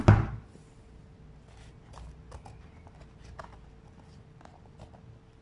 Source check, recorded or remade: recorded